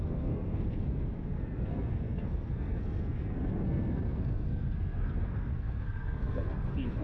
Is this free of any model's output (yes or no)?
no